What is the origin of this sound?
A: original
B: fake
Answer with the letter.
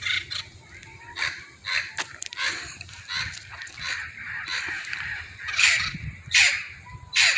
B